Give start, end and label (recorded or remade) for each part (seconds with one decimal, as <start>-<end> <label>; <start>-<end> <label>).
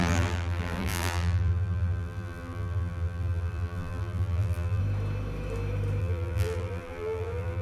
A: 0.0-4.8 remade; 4.8-6.0 recorded; 6.0-7.6 remade